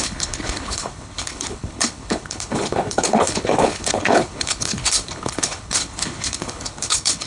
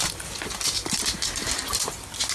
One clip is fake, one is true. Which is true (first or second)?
second